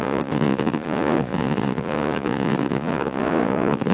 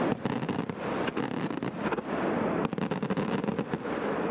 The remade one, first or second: first